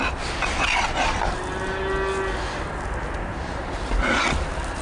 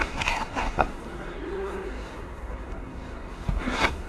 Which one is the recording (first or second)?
first